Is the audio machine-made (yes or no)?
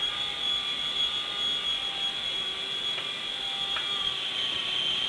no